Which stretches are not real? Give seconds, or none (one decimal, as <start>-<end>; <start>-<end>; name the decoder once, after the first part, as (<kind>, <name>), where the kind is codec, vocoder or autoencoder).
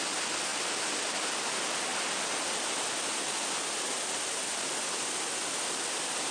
none